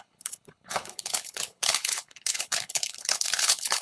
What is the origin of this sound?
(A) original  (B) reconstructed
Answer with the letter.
B